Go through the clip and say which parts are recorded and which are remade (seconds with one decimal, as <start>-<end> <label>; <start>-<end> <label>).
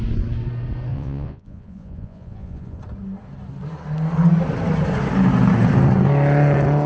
0.0-0.9 recorded; 0.9-2.8 remade; 2.8-6.9 recorded